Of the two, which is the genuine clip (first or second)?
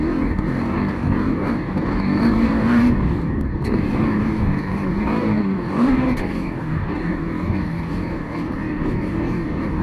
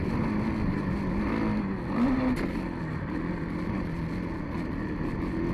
second